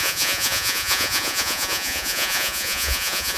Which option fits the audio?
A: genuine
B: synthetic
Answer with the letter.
B